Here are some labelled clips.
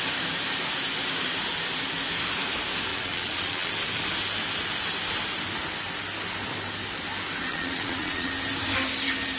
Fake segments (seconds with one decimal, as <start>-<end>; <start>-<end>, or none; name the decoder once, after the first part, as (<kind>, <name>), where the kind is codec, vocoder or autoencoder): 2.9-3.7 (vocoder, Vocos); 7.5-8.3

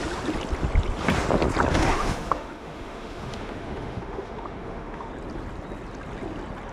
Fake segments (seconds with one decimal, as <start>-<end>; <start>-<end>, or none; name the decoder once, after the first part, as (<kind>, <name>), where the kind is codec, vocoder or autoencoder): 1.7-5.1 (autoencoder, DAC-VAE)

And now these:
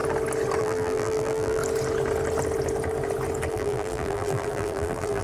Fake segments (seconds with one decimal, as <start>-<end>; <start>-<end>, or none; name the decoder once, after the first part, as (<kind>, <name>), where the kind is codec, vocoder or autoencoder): 0.6-1.6 (vocoder, BigVGAN v2); 3.5-5.2